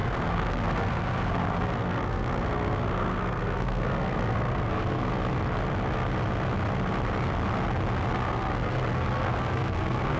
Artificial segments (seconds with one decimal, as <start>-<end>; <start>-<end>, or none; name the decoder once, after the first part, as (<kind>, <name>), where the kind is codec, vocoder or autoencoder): 0.0-5.1 (codec, SNAC); 8.1-10.2